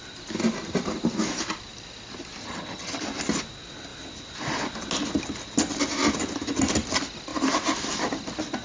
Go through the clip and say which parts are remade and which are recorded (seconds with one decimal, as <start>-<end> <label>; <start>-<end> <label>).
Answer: 0.0-2.4 recorded; 2.4-3.0 remade; 3.0-8.6 recorded